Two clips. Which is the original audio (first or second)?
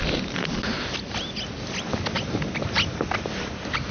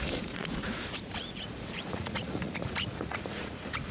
first